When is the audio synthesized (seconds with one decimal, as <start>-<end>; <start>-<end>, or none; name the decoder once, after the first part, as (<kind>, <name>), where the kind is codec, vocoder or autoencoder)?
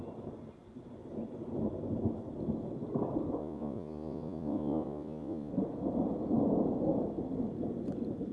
3.4-5.5 (vocoder, Vocos)